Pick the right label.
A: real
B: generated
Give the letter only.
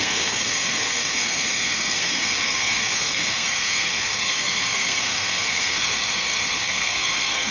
B